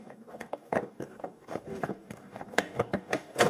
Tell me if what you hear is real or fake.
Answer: fake